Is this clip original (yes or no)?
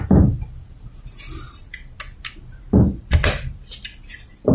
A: yes